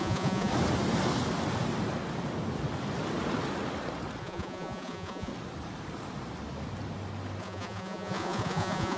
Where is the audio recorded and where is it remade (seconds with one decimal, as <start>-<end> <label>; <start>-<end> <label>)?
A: 0.0-0.5 remade; 0.5-4.2 recorded; 4.2-5.3 remade; 5.3-7.4 recorded; 7.4-9.0 remade